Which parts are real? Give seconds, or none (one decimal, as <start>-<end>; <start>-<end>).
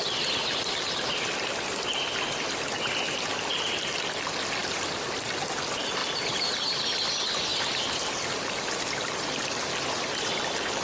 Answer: 0.0-4.6; 5.4-6.0; 7.1-10.8